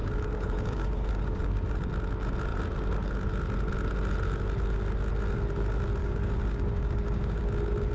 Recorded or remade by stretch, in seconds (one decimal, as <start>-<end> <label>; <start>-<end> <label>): 0.0-1.9 remade; 1.9-6.0 recorded; 6.0-7.4 remade; 7.4-7.9 recorded